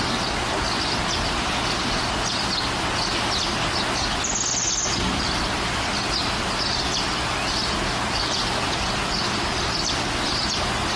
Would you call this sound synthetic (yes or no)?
no